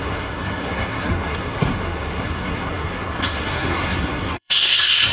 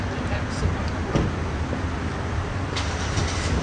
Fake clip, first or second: first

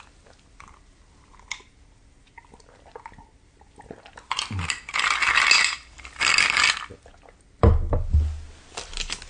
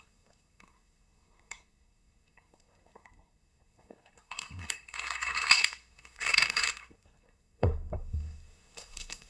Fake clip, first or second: second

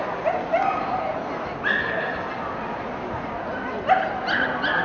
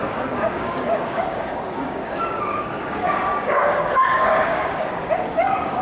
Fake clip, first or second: second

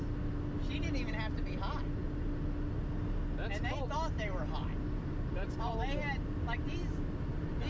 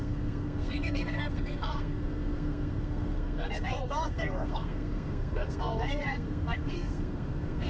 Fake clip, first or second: second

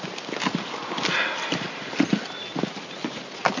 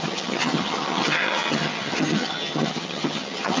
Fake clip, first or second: second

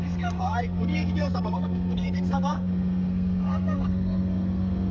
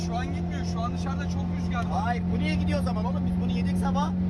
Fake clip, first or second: first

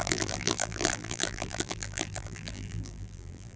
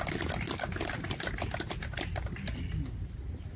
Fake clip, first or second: first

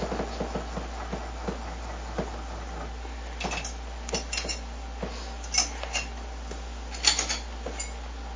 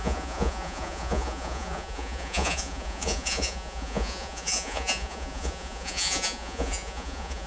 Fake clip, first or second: second